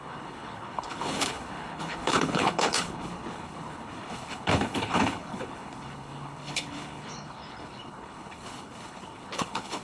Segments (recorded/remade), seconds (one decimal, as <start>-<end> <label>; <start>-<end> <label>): 0.0-9.8 remade